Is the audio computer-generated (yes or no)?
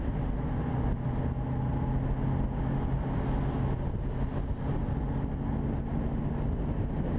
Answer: no